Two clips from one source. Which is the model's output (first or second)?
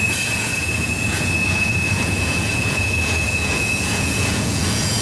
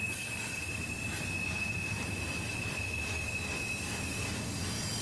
first